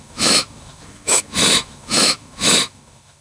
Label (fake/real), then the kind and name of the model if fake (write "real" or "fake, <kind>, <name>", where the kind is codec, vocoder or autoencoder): fake, autoencoder, DAC-VAE